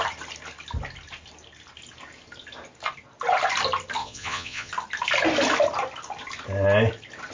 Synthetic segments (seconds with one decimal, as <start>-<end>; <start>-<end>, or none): 4.0-4.7